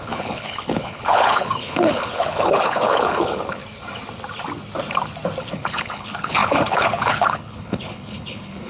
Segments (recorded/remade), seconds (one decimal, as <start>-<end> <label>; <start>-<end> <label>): 0.0-3.6 remade; 3.6-5.4 recorded; 5.4-8.7 remade